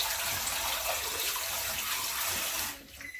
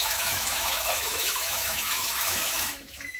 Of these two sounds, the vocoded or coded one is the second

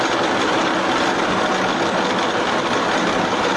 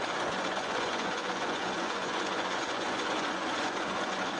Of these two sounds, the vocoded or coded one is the second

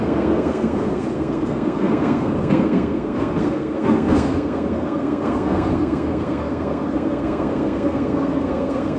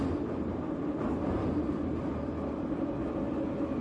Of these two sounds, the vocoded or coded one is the first